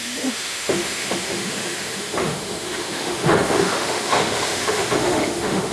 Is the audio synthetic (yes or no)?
yes